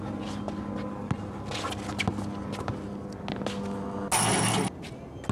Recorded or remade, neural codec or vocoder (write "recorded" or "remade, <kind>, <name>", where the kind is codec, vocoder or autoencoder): recorded